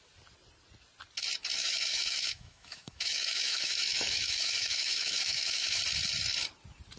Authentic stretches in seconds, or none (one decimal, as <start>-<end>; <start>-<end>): 0.0-1.6; 5.8-7.0